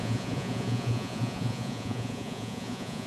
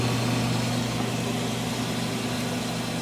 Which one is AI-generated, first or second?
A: first